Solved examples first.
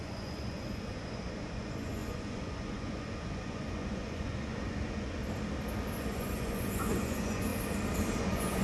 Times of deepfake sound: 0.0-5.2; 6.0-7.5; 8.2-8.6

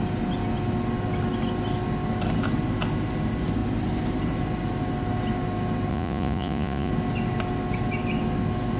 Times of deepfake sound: 5.9-6.9